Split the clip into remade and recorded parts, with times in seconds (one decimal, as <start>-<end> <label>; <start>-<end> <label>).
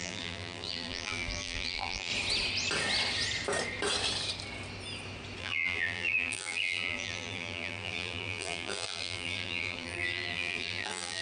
0.0-2.1 remade; 2.1-5.4 recorded; 5.4-11.2 remade